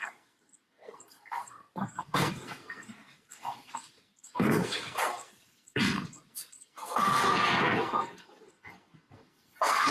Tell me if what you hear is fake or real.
fake